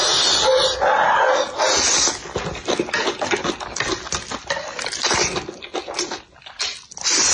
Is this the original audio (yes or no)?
yes